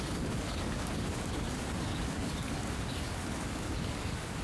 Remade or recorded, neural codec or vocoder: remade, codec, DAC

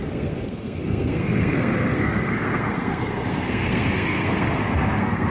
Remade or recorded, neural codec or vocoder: remade, codec, SNAC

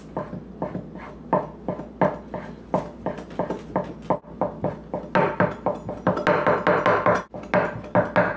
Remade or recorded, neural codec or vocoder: recorded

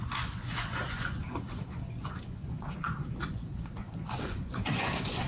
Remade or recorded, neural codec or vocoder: remade, vocoder, Vocos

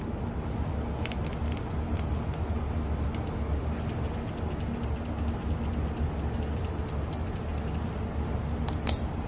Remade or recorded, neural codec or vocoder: recorded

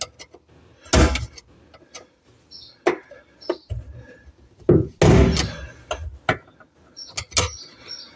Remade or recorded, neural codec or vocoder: recorded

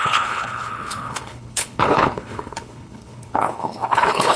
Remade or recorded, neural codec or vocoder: remade, codec, HILCodec